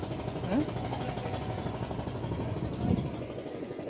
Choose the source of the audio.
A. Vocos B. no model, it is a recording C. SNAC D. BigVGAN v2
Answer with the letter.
A